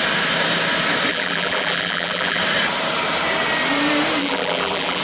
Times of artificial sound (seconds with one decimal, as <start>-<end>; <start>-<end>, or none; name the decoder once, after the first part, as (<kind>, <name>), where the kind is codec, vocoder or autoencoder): 1.1-2.4 (vocoder, BigVGAN v2); 4.2-5.0